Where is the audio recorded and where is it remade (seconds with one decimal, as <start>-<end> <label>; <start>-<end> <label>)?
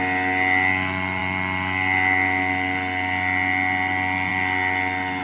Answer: 0.0-5.2 recorded